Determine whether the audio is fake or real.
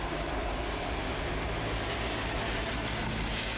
real